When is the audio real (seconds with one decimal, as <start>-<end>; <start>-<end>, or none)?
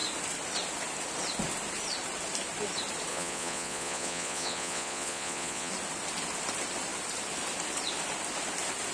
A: 0.0-3.1; 5.7-8.9